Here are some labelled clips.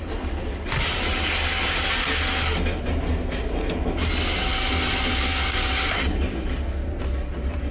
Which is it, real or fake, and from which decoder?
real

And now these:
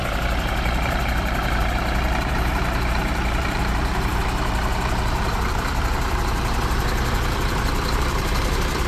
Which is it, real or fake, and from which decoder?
fake, vocoder, BigVGAN v2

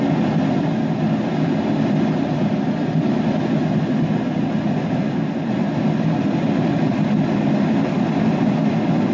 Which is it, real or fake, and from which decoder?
fake, vocoder, BigVGAN v2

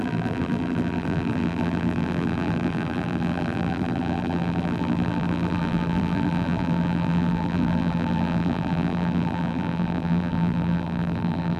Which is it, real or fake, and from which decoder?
fake, vocoder, BigVGAN v2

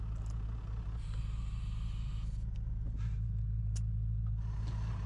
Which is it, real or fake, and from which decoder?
real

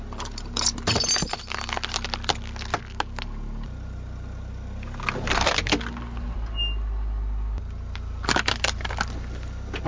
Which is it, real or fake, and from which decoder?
real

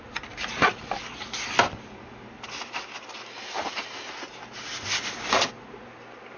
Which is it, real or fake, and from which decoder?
real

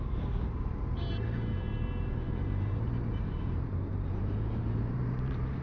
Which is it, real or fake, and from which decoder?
fake, vocoder, BigVGAN v2